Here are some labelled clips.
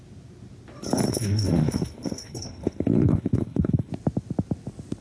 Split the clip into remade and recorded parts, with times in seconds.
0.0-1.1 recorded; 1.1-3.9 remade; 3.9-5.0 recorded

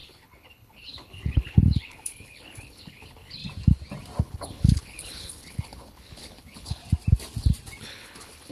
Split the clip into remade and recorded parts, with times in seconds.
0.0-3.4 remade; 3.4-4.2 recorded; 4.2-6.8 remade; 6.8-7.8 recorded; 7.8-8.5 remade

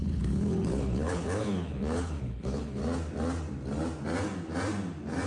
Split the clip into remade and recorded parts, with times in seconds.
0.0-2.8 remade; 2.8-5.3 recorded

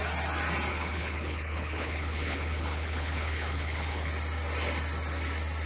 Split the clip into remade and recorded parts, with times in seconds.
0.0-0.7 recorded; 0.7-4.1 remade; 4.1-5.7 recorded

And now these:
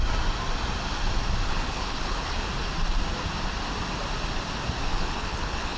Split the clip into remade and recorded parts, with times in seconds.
0.0-1.5 recorded; 1.5-2.5 remade; 2.5-4.9 recorded; 4.9-5.8 remade